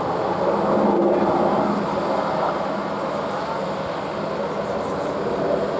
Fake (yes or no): no